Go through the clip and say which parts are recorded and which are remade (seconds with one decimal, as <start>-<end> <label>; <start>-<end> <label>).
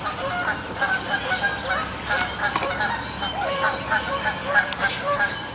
0.0-1.9 recorded; 1.9-5.5 remade